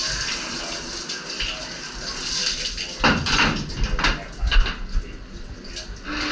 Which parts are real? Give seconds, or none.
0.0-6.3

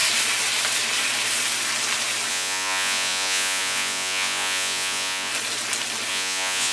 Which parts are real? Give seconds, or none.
0.0-2.3; 5.3-6.1

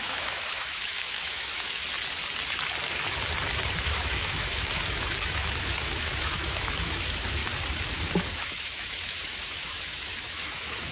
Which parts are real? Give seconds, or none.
1.8-3.8; 7.4-8.3

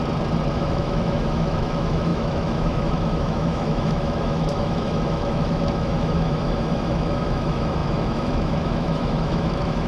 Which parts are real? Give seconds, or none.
0.0-0.5

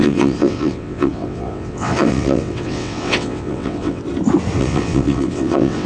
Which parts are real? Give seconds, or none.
4.0-4.6

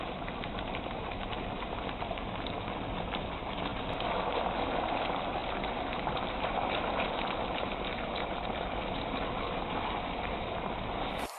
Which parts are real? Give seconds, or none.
5.4-6.0

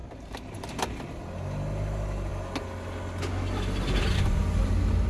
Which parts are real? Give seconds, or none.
1.2-5.1

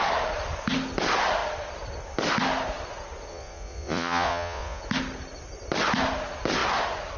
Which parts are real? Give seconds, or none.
0.0-3.3; 4.8-7.2